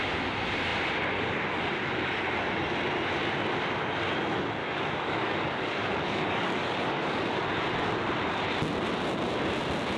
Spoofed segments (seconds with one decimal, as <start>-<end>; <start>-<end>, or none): 4.6-7.4